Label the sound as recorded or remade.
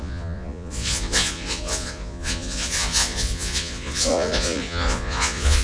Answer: remade